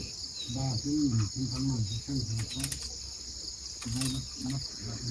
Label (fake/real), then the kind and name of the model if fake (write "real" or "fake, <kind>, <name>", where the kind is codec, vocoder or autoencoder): real